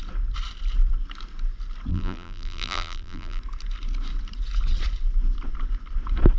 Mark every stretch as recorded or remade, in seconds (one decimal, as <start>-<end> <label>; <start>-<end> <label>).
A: 0.0-1.9 recorded; 1.9-3.4 remade; 3.4-6.4 recorded